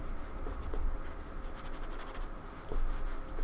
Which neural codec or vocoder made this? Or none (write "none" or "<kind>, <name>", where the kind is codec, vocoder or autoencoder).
none